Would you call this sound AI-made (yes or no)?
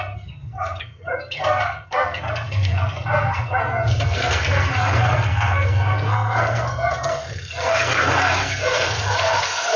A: yes